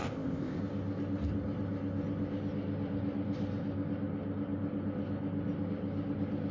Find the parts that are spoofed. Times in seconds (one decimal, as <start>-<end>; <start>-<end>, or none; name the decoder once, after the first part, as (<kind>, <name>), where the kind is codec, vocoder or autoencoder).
0.0-0.6 (codec, ZipCodec)